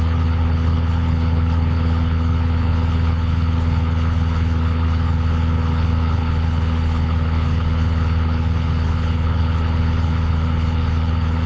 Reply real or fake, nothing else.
fake